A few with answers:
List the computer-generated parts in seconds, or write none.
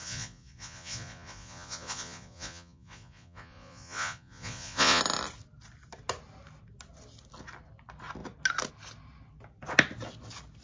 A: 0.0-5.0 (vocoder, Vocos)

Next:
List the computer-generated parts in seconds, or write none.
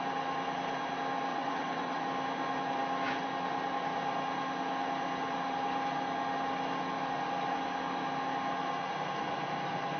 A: 1.3-2.0 (vocoder, WaveNeXt)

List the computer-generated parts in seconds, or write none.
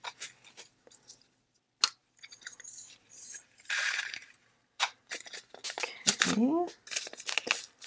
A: 2.0-5.4 (vocoder, BigVGAN v2)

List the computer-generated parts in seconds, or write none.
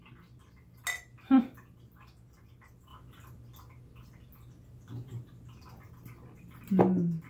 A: none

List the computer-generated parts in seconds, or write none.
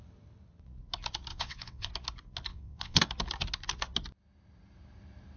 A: 1.3-1.9 (vocoder, WaveNeXt); 2.5-3.0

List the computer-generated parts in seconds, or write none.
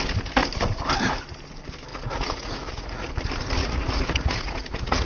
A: 1.9-3.1 (vocoder, Vocos); 3.6-5.1